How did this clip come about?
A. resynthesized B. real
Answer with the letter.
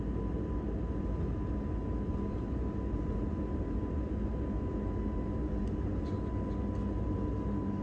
B